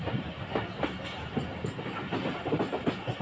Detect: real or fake real